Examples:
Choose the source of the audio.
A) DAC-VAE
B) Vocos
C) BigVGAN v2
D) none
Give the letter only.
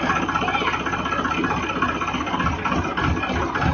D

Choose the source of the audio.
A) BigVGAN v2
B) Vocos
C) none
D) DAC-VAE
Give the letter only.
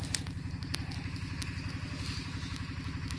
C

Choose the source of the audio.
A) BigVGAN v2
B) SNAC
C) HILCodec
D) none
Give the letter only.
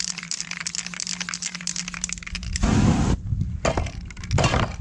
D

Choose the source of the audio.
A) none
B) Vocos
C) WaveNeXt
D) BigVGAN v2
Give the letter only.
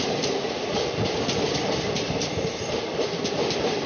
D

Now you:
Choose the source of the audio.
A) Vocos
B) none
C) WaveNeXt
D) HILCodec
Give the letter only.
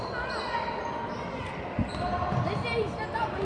B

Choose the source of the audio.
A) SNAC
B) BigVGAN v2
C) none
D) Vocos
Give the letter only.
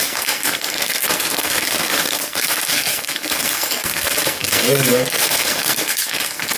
A